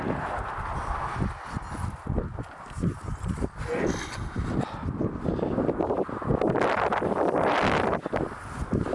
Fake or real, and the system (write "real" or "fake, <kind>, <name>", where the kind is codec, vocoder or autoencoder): real